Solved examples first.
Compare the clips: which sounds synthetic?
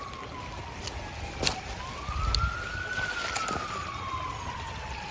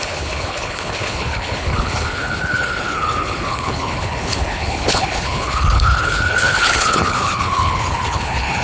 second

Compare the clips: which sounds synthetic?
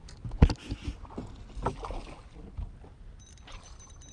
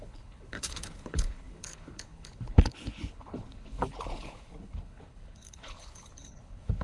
second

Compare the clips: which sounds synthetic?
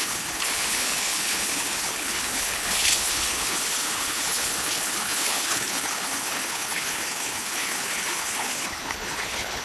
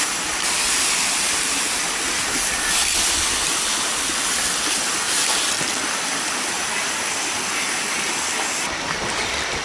first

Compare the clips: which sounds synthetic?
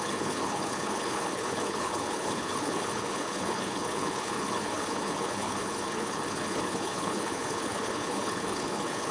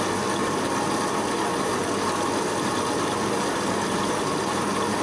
first